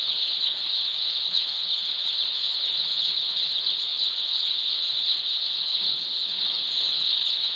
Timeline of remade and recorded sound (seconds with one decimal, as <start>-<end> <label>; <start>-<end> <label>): 0.0-7.6 remade